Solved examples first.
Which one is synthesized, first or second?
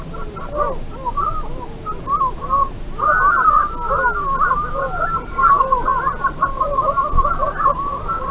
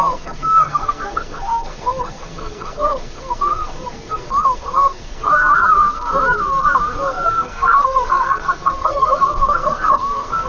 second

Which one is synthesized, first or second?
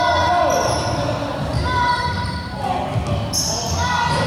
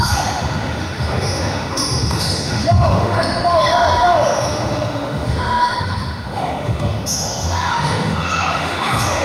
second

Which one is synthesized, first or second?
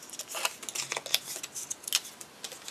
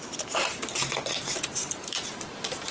second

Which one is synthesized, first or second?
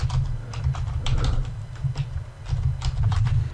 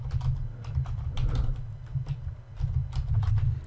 first